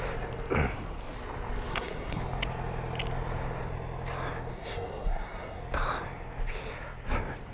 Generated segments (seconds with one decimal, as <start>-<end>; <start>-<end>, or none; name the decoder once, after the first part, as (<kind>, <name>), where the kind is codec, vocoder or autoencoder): 1.7-2.2 (codec, SNAC); 4.5-5.6